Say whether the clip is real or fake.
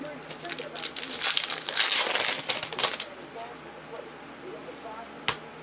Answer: real